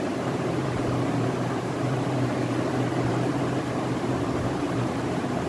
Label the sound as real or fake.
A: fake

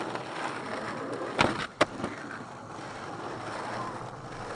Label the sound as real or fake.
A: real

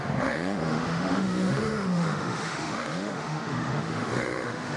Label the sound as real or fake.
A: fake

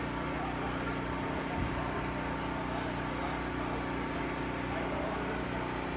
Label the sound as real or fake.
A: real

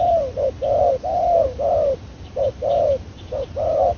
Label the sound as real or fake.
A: fake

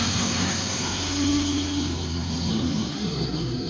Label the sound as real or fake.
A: fake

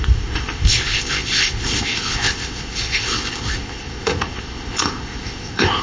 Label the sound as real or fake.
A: fake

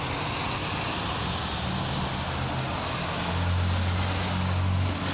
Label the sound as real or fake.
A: real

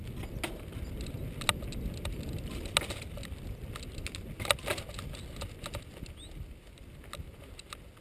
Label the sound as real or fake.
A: real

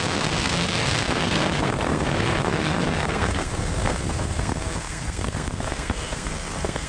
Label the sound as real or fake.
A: fake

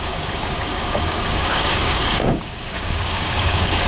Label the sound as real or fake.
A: fake